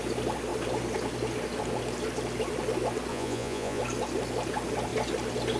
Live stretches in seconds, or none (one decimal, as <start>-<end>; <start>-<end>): 0.0-3.1; 3.8-5.6